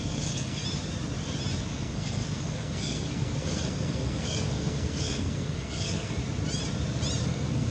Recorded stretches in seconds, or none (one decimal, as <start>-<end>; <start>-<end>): 0.6-1.6; 6.2-7.2